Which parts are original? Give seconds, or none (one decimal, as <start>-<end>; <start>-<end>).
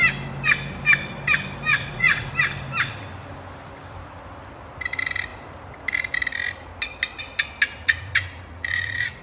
0.0-1.7; 2.3-7.7